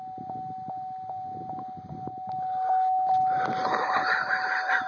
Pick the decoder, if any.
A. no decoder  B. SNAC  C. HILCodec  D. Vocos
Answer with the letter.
A